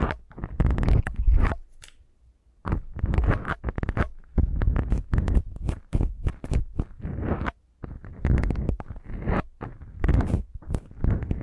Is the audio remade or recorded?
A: recorded